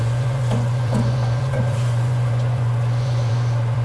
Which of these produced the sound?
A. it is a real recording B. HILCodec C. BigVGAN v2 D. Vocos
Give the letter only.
D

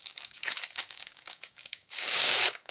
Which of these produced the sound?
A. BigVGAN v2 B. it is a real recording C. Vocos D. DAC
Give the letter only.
D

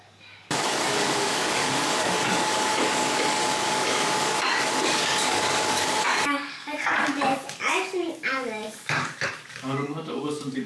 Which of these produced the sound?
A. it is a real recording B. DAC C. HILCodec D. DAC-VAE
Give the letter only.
B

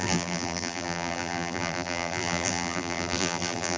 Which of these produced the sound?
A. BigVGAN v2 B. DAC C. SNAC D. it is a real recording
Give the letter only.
A